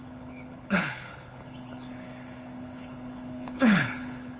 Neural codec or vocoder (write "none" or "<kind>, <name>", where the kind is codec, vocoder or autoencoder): codec, HILCodec